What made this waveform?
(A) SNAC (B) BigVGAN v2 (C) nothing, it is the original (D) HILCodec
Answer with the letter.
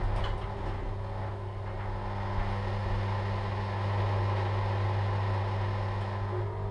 C